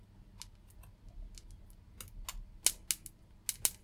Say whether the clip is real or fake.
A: real